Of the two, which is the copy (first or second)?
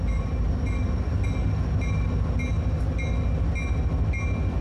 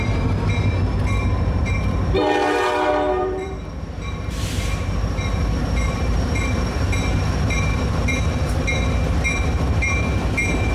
second